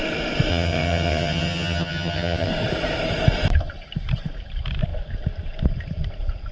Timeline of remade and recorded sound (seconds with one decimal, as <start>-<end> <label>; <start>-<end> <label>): 0.0-0.5 recorded; 0.5-2.5 remade; 2.5-6.5 recorded